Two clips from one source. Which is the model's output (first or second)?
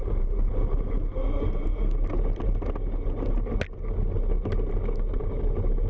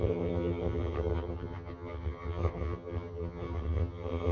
second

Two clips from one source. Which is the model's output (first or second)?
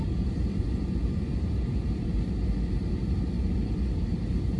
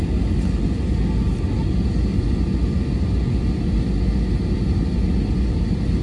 first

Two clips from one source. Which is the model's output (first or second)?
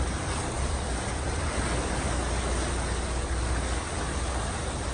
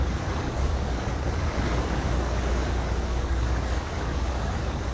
second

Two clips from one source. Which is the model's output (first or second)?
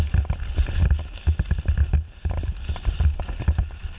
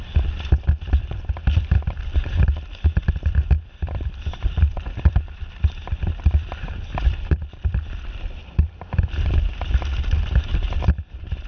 second